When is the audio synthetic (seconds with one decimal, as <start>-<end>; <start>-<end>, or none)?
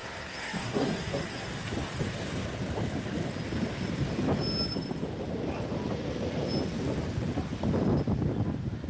0.0-1.5